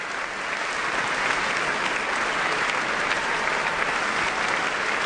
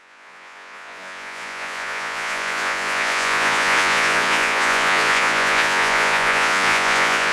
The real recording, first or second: first